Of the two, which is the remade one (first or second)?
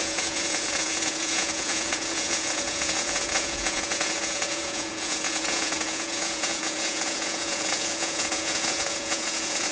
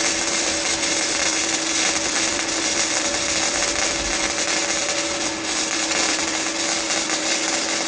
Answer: first